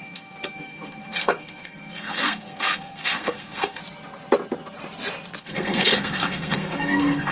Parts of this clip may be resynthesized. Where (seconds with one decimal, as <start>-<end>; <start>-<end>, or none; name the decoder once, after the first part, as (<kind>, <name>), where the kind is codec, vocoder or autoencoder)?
0.0-3.8 (codec, SNAC); 5.4-7.3